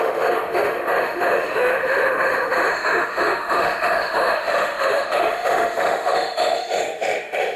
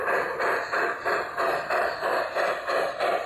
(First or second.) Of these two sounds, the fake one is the first